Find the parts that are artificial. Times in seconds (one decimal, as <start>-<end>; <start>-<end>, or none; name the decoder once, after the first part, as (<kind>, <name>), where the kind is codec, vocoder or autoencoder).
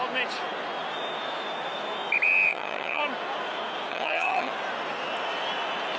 2.5-3.0 (vocoder, HiFi-GAN); 3.9-4.5